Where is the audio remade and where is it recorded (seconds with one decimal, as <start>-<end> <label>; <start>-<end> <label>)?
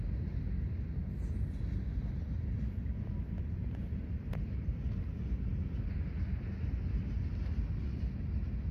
0.0-8.7 recorded